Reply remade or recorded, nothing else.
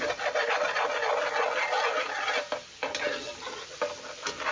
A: recorded